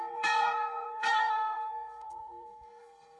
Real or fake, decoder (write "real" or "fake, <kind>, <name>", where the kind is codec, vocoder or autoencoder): fake, codec, SNAC